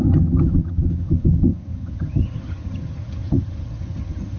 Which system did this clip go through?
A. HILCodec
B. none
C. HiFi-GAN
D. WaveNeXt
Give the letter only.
C